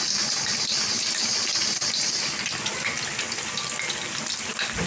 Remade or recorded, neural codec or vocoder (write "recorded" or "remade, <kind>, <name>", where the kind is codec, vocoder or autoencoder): recorded